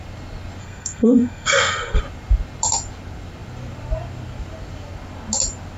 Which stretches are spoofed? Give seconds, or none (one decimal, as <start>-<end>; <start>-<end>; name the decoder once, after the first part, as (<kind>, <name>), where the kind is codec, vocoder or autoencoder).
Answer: 0.6-2.0 (codec, SNAC)